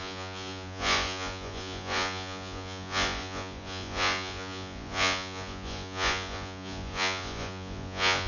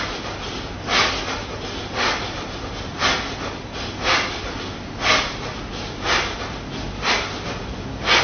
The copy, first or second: first